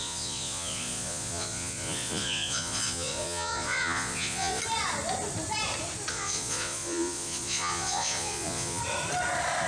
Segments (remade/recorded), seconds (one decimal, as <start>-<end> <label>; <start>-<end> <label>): 0.0-4.6 remade; 4.6-6.1 recorded; 6.1-8.8 remade; 8.8-9.7 recorded